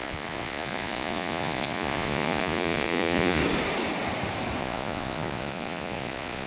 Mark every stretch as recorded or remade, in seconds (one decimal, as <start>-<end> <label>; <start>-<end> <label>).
0.0-3.4 remade; 3.4-4.6 recorded; 4.6-6.5 remade